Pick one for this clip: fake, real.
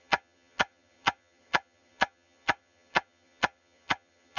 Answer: fake